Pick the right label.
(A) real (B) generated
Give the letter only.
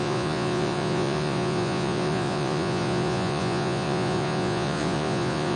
B